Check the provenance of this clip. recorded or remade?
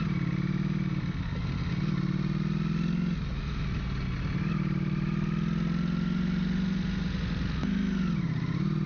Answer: recorded